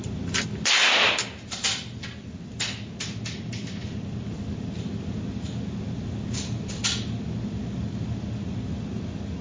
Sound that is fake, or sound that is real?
real